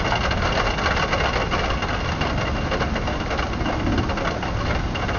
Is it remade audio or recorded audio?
recorded